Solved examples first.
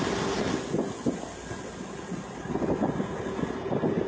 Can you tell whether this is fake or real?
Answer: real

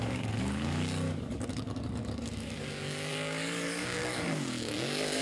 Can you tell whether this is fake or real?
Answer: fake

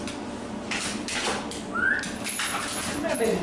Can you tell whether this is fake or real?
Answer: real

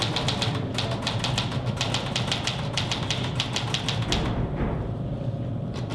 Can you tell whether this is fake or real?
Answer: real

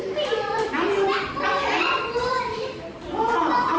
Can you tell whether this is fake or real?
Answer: fake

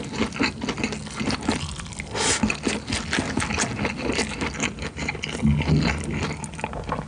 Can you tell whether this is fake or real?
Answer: real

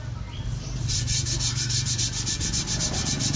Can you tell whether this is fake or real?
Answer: real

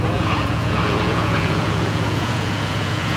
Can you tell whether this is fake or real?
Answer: fake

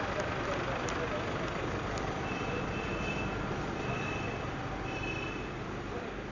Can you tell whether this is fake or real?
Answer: real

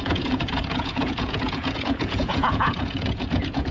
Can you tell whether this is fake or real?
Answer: fake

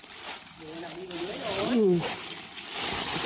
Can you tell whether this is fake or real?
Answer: fake